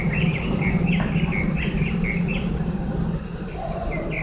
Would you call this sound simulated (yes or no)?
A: no